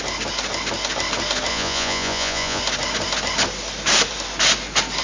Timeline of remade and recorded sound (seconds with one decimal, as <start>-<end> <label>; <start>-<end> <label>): 0.0-1.5 recorded; 1.5-2.6 remade; 2.6-5.0 recorded